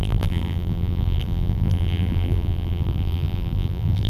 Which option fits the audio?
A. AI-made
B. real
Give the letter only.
A